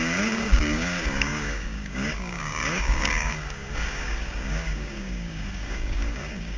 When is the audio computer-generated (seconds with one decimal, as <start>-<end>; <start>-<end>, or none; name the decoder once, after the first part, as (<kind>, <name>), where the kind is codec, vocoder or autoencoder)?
0.0-6.6 (codec, DAC)